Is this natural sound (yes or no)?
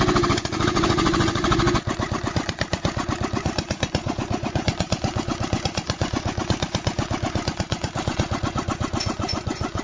no